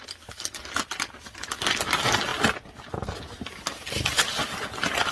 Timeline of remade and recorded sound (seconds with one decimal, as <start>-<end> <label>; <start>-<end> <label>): 0.0-5.1 recorded